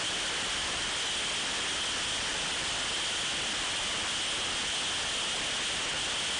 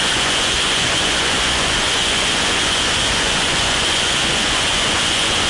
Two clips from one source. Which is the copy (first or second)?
second